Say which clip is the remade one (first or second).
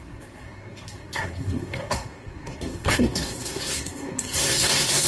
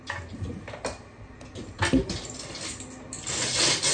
first